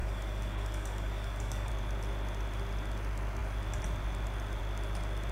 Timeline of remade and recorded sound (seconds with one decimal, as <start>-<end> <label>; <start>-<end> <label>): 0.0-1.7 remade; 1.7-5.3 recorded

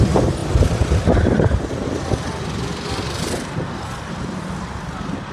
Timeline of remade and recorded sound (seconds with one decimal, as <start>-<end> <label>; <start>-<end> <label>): 0.0-5.3 recorded

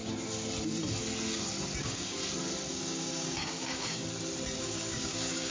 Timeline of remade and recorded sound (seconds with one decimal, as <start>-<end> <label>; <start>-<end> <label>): 0.0-1.8 recorded; 1.8-2.2 remade; 2.2-2.7 recorded; 2.7-4.0 remade; 4.0-4.6 recorded; 4.6-5.5 remade